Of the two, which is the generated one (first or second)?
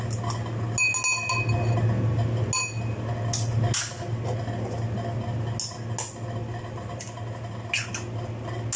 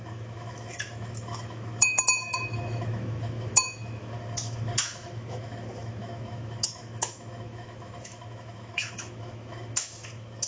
second